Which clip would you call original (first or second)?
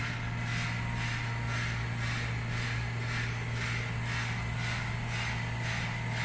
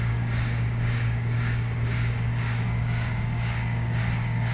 first